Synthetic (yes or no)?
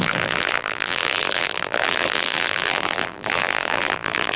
yes